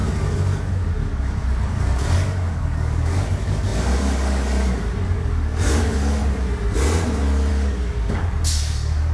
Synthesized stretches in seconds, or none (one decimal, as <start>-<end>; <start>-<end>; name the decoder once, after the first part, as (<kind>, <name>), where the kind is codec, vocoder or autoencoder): 0.0-6.2 (codec, DAC); 7.5-9.1